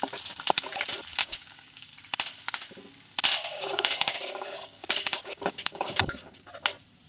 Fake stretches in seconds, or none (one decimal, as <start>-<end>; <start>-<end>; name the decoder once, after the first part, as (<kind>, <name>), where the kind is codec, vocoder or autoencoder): 1.2-1.9 (codec, DAC); 3.4-6.5